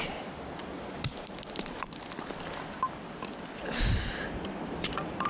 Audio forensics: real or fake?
real